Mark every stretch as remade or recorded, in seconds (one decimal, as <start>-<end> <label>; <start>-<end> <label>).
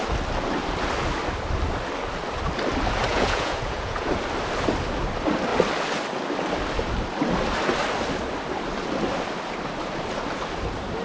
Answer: 0.0-3.1 recorded; 3.1-4.1 remade; 4.1-11.0 recorded